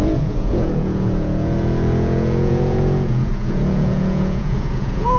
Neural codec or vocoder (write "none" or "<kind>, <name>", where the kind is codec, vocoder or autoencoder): vocoder, Vocos